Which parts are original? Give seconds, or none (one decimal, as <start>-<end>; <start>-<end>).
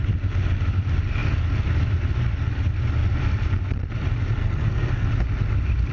0.0-4.4; 5.1-5.9